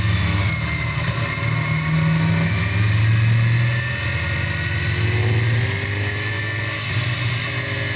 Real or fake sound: real